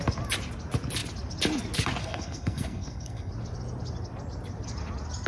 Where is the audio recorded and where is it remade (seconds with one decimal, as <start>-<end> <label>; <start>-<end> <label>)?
0.0-2.0 recorded; 2.0-3.3 remade; 3.3-5.3 recorded